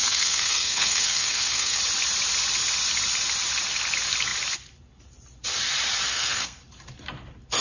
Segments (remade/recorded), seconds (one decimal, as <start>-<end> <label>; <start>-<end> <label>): 0.0-1.8 remade; 1.8-6.1 recorded; 6.1-6.6 remade; 6.6-7.6 recorded